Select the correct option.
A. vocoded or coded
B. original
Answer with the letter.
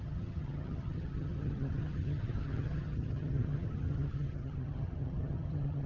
A